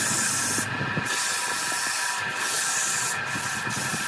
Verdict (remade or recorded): recorded